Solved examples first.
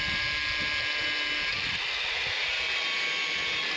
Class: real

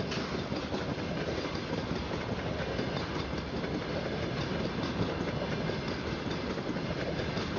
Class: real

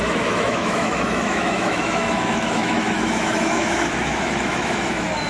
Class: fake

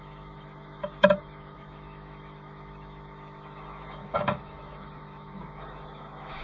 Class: fake